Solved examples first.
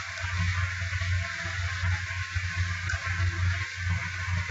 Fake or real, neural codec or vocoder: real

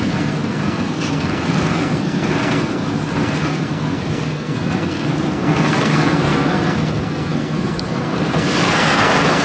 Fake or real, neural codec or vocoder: fake, codec, SNAC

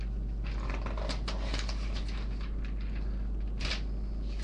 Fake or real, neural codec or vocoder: real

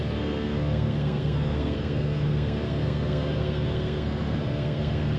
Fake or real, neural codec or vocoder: fake, codec, SNAC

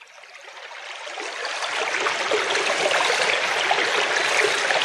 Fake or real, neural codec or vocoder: real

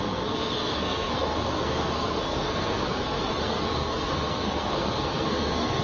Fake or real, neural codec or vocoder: fake, codec, SNAC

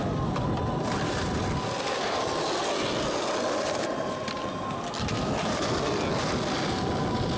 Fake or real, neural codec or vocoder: real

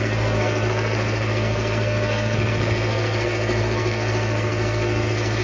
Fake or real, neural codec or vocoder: fake, codec, SNAC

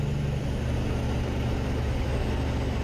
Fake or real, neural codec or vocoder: real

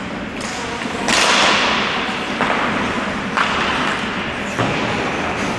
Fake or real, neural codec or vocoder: real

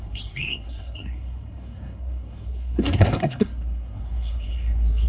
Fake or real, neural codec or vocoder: fake, codec, SNAC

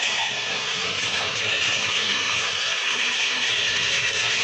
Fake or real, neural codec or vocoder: fake, codec, SNAC